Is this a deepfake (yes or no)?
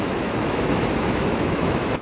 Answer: yes